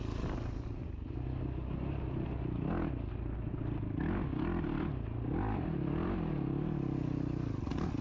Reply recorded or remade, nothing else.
recorded